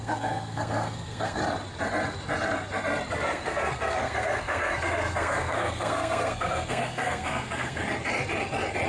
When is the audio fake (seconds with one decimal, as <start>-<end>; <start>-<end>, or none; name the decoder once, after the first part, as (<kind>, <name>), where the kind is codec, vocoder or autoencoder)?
0.0-1.4 (codec, SNAC); 3.1-7.8